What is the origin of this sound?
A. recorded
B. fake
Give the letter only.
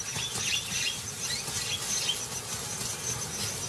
A